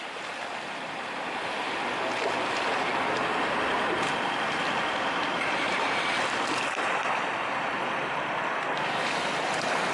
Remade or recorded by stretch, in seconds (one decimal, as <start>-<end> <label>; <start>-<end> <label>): 0.0-9.9 recorded